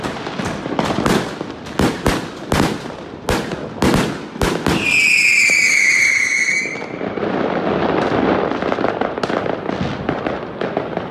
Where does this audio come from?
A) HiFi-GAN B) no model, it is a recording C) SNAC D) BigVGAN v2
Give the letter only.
B